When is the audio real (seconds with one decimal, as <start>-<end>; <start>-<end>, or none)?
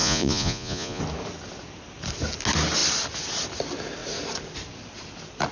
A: 1.0-5.5